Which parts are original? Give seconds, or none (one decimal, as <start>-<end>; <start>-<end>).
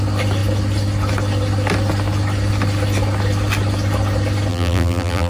0.0-4.5